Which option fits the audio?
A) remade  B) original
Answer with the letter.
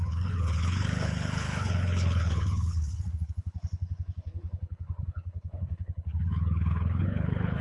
A